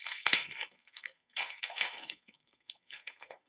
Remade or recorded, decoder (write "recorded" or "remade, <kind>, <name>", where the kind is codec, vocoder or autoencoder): remade, codec, SNAC